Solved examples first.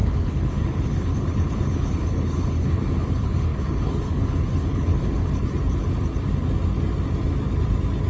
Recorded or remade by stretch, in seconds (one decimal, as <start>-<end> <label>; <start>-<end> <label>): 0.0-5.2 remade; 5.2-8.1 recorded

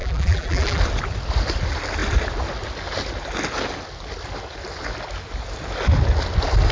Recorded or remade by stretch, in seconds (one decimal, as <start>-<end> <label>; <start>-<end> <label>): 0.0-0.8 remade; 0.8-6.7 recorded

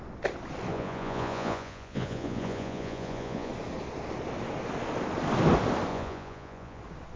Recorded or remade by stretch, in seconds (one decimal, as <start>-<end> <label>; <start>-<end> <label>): 0.0-0.7 recorded; 0.7-3.5 remade; 3.5-5.9 recorded; 5.9-6.8 remade; 6.8-7.2 recorded

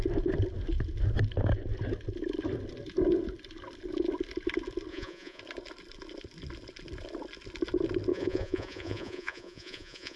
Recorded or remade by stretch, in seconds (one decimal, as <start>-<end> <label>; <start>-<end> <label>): 0.0-4.9 recorded; 4.9-5.4 remade; 5.4-8.1 recorded; 8.1-10.2 remade

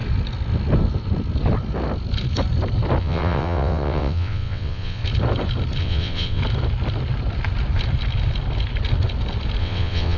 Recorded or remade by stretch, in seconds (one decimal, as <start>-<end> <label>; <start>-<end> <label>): 0.0-3.0 recorded; 3.0-5.0 remade; 5.0-5.8 recorded; 5.8-6.4 remade; 6.4-9.6 recorded; 9.6-10.2 remade

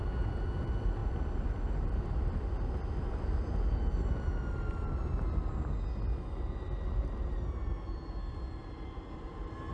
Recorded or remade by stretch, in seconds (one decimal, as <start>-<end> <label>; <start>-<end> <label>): 0.0-9.7 recorded